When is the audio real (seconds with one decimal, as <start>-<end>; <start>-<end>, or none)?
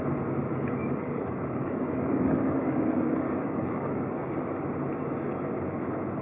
0.0-0.8; 4.3-6.2